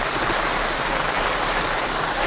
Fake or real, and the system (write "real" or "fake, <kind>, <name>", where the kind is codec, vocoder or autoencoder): real